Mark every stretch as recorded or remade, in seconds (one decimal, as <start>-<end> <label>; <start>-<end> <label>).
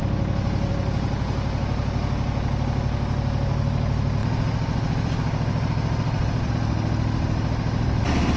0.0-8.4 recorded